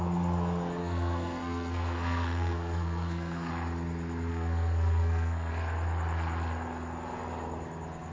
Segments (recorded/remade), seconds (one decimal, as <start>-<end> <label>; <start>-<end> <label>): 0.0-0.8 recorded; 0.8-3.5 remade; 3.5-4.3 recorded; 4.3-5.5 remade; 5.5-8.1 recorded